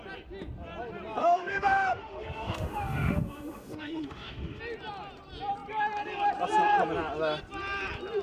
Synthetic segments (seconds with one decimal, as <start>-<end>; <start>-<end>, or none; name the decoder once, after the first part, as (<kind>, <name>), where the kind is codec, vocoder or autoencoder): 1.2-4.6 (autoencoder, DAC-VAE)